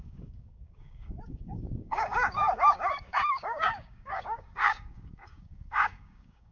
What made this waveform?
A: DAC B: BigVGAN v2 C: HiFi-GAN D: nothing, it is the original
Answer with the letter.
A